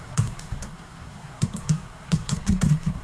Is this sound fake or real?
fake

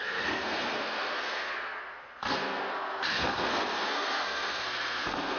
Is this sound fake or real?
fake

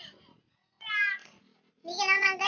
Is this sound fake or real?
real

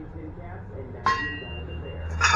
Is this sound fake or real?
real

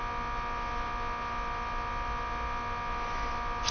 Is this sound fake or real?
real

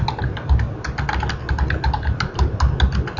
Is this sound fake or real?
real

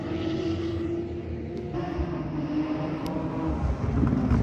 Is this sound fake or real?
real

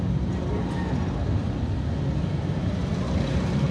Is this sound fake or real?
real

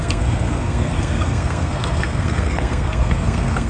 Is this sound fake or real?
fake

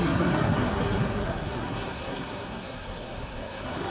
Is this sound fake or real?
fake